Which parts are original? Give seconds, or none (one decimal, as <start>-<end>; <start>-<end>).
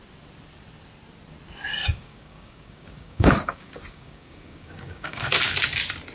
0.0-1.8; 5.3-6.1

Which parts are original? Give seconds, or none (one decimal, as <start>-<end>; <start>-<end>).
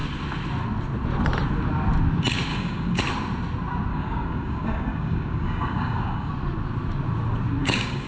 0.0-2.5; 3.0-3.9; 6.3-7.6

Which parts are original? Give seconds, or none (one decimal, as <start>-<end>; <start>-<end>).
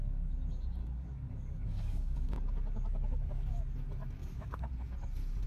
0.0-0.8; 3.6-4.2; 4.7-5.5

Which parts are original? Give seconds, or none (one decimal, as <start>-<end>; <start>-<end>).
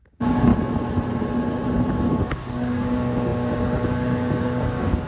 0.5-1.9